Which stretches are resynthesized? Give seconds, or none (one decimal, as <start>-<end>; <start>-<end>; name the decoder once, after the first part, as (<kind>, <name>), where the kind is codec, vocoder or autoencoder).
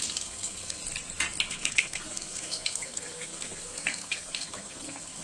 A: 0.0-0.8 (codec, SNAC); 1.5-5.2